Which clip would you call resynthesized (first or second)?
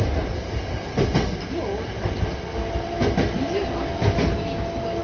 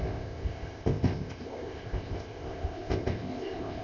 second